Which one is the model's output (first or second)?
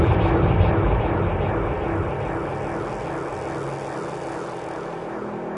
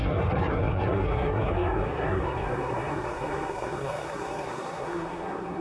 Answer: second